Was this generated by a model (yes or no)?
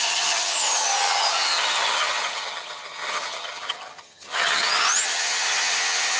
yes